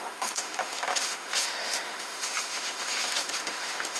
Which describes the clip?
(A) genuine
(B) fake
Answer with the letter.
B